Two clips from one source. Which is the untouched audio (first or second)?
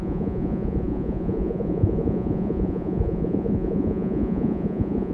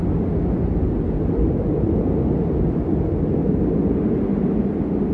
second